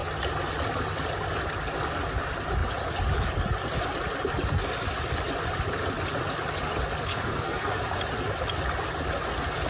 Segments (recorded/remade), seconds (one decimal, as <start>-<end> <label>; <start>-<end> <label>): 0.0-7.1 recorded; 7.1-7.8 remade; 7.8-9.7 recorded